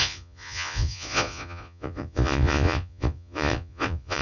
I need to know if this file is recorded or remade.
remade